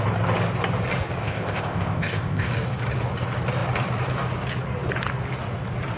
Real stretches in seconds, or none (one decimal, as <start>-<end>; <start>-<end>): 0.0-1.2; 2.5-6.0